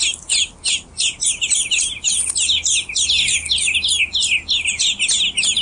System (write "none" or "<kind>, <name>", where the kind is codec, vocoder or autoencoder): none